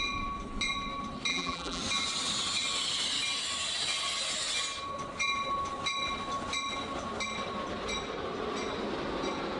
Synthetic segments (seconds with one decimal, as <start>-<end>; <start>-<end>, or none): 1.3-1.8

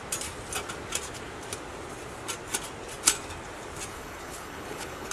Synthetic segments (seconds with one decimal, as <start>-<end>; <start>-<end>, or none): 3.9-5.1

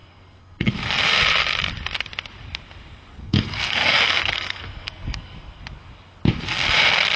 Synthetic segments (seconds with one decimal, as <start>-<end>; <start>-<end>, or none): 0.0-0.7; 3.2-5.6